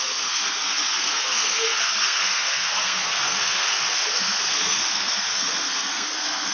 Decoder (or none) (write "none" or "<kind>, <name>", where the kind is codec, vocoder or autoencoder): codec, SNAC